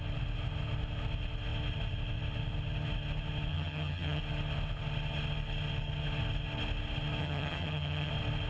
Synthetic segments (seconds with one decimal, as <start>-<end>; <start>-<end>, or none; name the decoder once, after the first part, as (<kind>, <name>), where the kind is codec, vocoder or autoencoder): 3.5-4.2 (vocoder, HiFi-GAN); 7.2-8.1